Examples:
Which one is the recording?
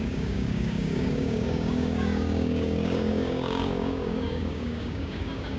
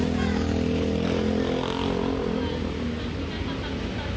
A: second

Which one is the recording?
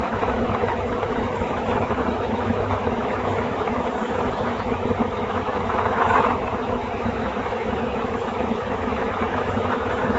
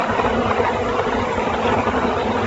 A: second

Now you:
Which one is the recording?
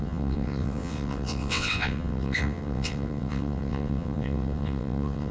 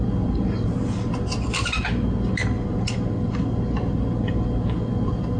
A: second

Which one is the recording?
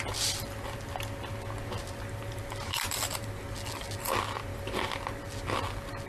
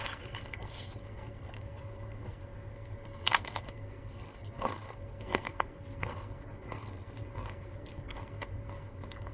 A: first